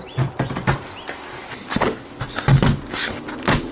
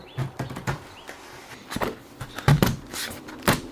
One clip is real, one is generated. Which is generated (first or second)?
second